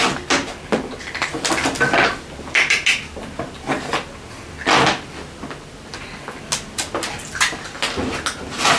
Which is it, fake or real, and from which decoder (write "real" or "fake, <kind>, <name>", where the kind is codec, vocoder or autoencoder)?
real